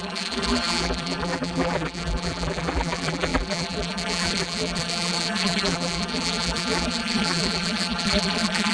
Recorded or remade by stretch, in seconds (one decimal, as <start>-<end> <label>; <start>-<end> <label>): 0.0-8.7 remade